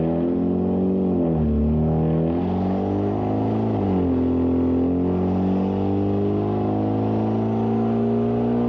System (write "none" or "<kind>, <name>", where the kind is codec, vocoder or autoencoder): none